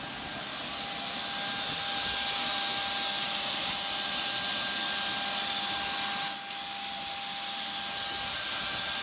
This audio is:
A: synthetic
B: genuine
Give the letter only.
B